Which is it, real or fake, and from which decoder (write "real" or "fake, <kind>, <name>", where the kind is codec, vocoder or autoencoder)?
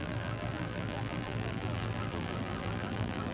fake, vocoder, BigVGAN v2